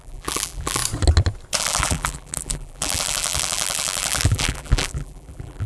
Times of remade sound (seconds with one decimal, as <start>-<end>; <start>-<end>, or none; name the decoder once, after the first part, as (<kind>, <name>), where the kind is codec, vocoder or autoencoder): 0.0-0.8 (vocoder, BigVGAN v2); 1.6-5.7